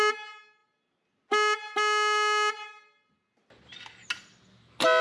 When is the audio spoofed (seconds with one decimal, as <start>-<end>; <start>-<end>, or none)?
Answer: none